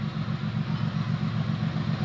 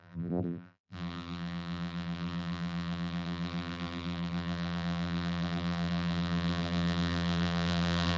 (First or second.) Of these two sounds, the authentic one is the first